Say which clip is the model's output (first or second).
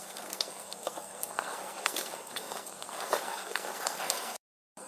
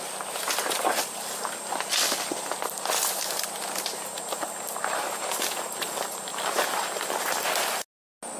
first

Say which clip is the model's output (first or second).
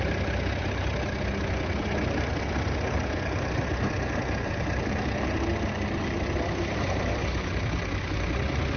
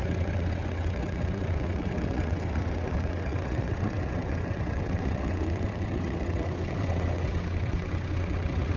second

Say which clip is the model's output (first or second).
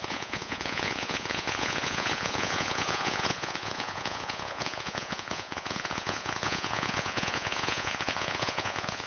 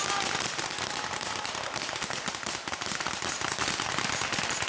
first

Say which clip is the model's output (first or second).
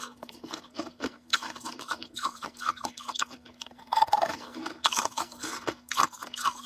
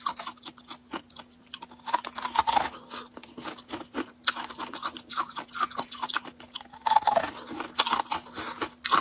first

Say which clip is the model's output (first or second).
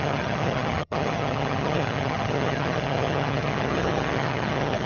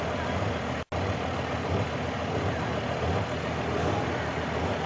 first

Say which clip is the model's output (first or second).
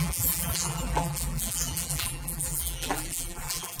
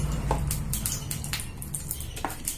first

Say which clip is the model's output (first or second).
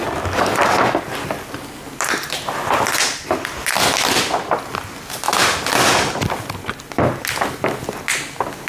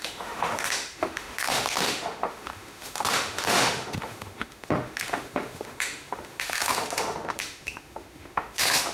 second